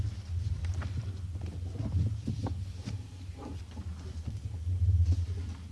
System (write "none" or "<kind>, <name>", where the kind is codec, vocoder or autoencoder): none